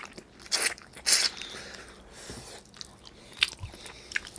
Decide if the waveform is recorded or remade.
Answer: recorded